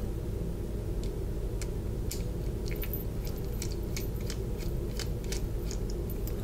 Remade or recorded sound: recorded